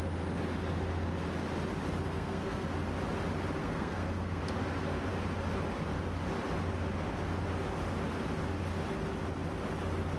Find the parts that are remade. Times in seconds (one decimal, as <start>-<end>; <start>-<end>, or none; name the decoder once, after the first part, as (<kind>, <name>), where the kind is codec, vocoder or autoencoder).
2.1-2.7 (codec, SNAC); 3.6-4.4